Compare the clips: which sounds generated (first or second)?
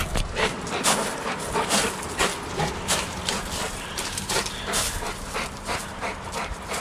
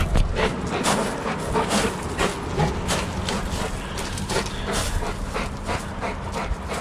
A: first